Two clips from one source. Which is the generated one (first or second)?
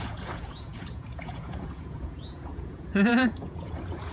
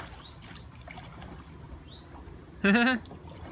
first